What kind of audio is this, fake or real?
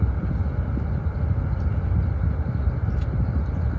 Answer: real